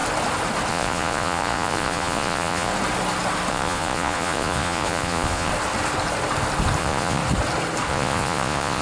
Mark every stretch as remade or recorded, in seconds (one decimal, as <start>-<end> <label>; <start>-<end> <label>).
0.0-0.7 recorded; 0.7-2.7 remade; 2.7-3.5 recorded; 3.5-5.5 remade; 5.5-6.8 recorded; 6.8-7.2 remade; 7.2-7.9 recorded; 7.9-8.8 remade